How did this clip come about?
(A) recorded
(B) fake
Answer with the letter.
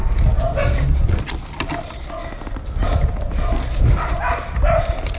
A